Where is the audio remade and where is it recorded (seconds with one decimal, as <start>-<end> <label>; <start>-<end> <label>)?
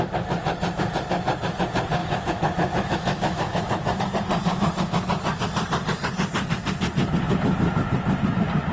0.0-2.0 recorded; 2.0-4.0 remade; 4.0-8.7 recorded